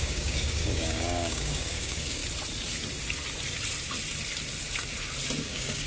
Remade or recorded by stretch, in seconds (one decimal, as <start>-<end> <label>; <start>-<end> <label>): 0.0-2.2 remade; 2.2-5.4 recorded; 5.4-5.9 remade